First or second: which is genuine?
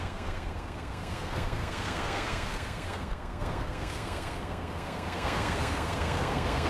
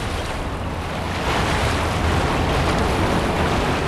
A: second